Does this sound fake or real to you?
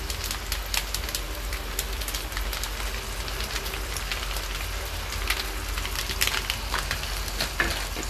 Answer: real